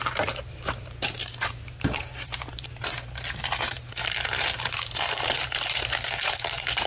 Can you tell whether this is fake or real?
fake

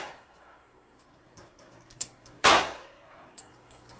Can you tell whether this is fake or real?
fake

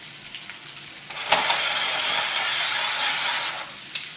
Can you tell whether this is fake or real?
real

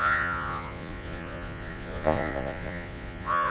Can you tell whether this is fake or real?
fake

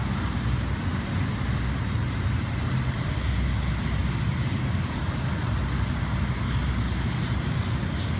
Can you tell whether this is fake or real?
real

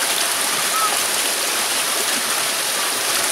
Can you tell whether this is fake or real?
real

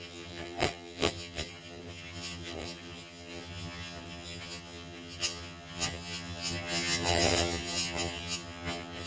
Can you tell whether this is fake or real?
fake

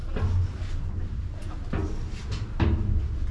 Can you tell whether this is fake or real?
real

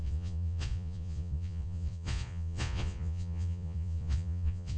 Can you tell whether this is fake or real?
fake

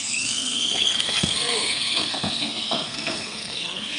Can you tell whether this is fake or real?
fake